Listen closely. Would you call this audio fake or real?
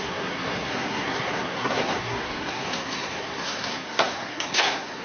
fake